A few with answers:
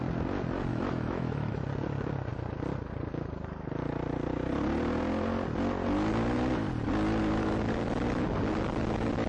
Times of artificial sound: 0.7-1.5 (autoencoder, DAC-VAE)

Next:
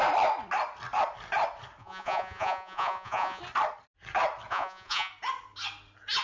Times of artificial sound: 1.8-3.4 (vocoder, Vocos); 4.5-5.1

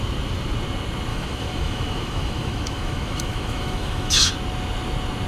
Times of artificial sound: 1.1-4.3 (autoencoder, DAC-VAE)

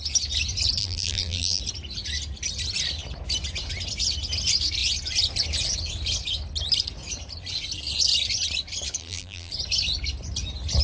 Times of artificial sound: 0.8-1.6 (vocoder, BigVGAN v2); 9.0-9.5

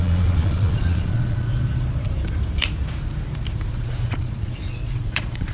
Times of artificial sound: 0.0-1.5 (vocoder, Vocos); 3.7-5.5

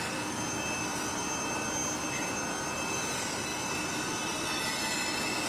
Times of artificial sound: none

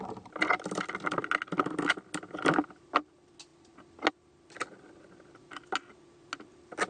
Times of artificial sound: none

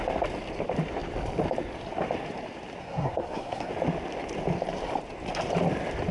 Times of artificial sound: 2.8-3.7 (codec, SNAC)